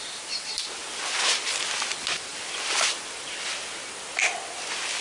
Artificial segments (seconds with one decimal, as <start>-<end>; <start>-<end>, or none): none